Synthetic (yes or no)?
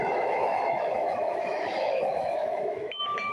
yes